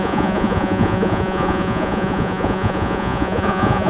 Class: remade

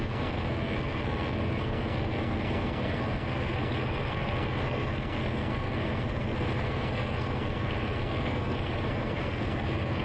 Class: remade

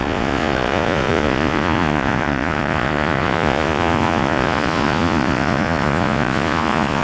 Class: remade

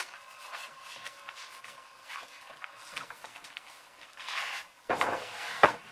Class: remade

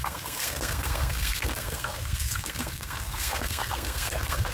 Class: remade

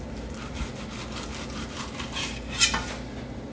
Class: recorded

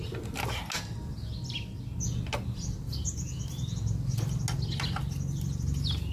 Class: recorded